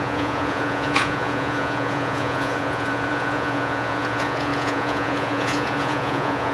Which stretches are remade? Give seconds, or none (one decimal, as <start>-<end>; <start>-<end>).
0.0-6.5